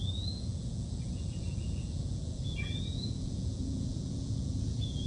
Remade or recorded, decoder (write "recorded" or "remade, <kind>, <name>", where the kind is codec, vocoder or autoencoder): remade, vocoder, Vocos